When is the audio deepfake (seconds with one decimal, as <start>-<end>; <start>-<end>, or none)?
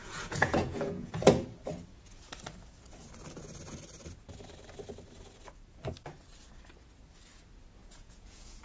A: 0.0-1.1; 7.8-8.6